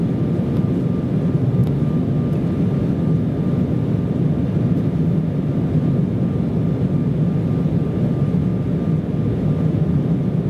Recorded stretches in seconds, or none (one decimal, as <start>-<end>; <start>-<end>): 0.0-10.5